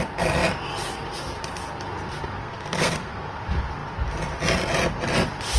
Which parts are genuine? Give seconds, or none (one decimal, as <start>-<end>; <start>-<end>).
0.0-2.4; 3.3-5.6